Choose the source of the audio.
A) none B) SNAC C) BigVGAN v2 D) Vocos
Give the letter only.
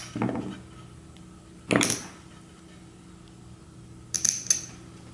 A